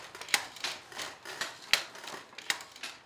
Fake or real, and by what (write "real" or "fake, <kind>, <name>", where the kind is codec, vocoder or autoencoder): real